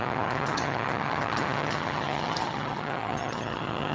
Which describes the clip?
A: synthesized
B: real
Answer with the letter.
A